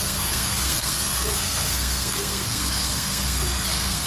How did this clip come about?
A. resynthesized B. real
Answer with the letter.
A